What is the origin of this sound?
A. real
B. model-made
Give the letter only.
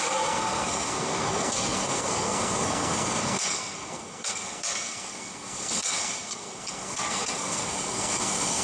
B